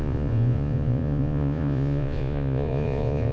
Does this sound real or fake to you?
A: fake